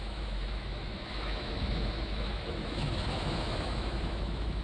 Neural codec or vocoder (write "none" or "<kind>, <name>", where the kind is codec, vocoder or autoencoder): autoencoder, DAC-VAE